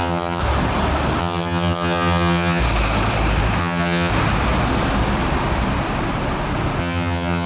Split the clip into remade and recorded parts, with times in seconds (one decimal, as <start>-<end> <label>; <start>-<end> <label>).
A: 0.0-0.4 remade; 0.4-1.2 recorded; 1.2-2.6 remade; 2.6-3.6 recorded; 3.6-4.1 remade; 4.1-6.8 recorded; 6.8-7.5 remade